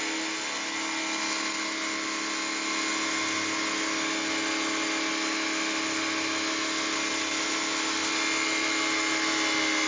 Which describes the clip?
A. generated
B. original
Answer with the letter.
B